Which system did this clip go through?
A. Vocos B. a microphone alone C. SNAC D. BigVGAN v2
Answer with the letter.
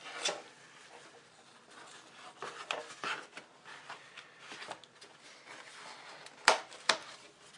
B